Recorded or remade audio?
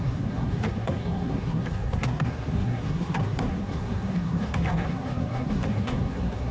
remade